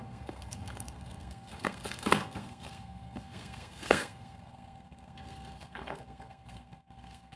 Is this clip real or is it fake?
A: fake